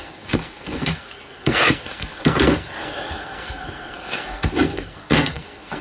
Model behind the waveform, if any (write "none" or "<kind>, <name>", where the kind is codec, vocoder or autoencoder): codec, SNAC